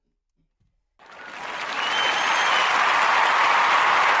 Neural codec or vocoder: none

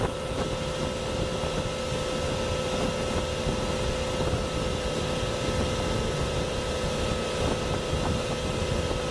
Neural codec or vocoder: none